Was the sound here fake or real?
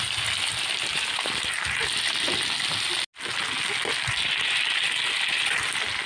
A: real